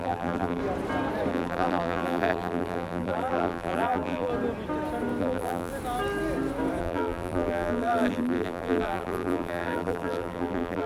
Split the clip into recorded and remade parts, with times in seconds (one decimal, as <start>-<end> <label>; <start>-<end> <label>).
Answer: 0.0-0.6 remade; 0.6-1.3 recorded; 1.3-4.3 remade; 4.3-5.2 recorded; 5.2-5.7 remade; 5.7-6.8 recorded; 6.8-10.9 remade